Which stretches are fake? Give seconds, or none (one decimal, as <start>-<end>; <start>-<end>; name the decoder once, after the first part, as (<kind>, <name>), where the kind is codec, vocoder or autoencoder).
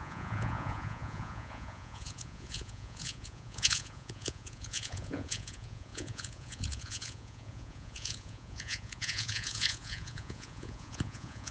0.0-11.5 (vocoder, Vocos)